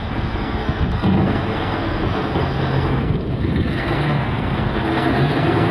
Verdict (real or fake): fake